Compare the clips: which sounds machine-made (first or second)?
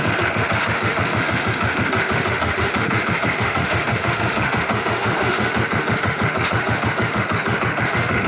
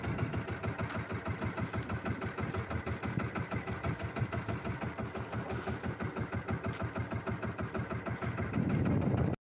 first